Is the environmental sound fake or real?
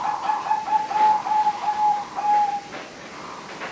real